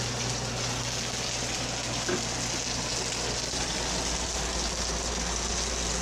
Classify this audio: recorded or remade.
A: recorded